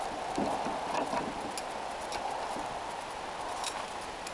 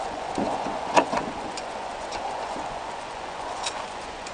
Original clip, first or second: first